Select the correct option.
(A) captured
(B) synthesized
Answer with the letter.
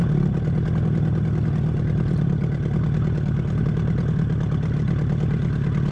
A